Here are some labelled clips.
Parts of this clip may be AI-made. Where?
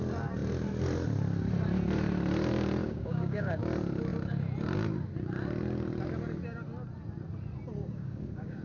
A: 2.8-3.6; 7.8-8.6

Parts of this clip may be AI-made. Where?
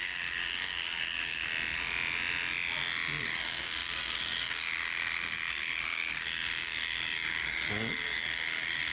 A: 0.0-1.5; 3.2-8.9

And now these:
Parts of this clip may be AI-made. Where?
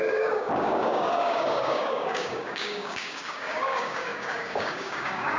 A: 0.0-5.4